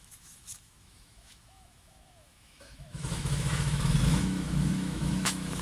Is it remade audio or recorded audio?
remade